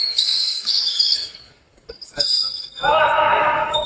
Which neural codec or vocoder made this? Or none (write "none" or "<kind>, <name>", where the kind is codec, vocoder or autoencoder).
codec, DAC